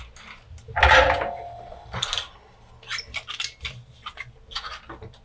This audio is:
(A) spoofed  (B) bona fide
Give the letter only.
B